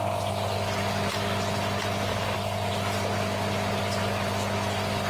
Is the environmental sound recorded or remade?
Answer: recorded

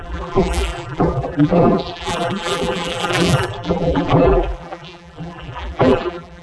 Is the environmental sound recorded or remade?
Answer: remade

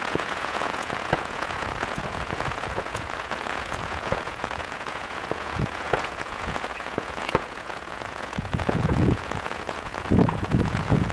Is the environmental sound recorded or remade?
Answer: remade